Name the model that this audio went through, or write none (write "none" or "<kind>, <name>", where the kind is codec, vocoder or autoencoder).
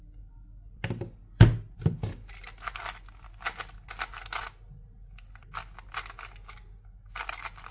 none